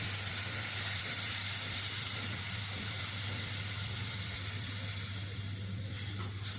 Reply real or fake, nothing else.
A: fake